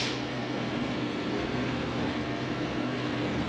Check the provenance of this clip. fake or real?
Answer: fake